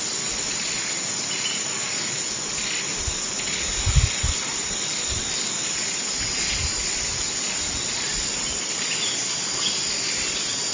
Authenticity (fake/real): real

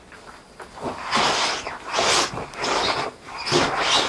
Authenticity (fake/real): real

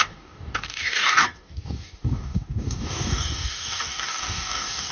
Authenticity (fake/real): fake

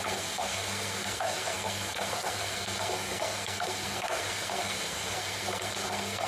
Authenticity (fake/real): fake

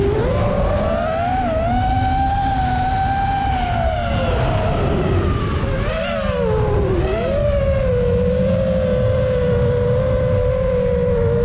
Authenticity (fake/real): real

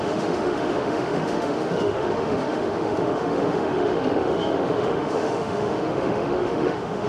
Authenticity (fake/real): fake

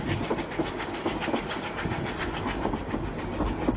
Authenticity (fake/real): real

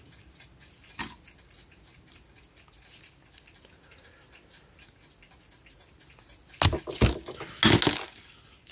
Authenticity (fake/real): real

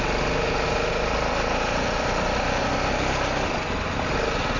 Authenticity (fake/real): real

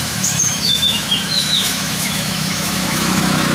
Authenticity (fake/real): fake